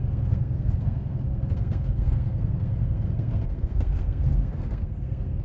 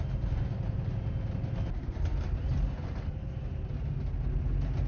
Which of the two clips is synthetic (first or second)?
first